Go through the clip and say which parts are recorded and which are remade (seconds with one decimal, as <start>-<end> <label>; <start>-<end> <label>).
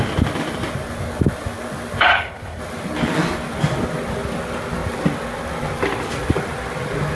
0.0-2.1 recorded; 2.1-2.6 remade; 2.6-7.1 recorded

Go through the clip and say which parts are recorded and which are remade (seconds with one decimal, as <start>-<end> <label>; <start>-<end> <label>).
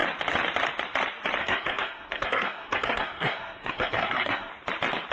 0.0-1.4 recorded; 1.4-4.5 remade; 4.5-5.1 recorded